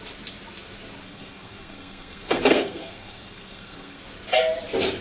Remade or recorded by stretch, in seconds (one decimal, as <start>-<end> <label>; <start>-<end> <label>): 0.0-1.0 recorded; 1.0-4.0 remade; 4.0-5.0 recorded